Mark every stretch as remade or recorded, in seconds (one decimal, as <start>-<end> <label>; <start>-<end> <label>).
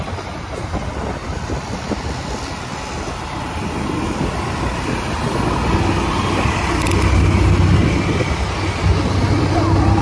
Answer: 0.0-10.0 recorded